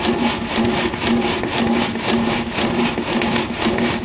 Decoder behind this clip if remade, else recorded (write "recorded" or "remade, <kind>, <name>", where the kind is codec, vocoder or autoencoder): recorded